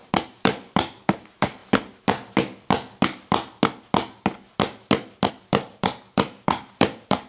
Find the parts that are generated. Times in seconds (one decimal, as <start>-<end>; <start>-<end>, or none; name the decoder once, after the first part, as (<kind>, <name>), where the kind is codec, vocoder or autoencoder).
0.0-1.6 (vocoder, BigVGAN v2); 5.3-7.3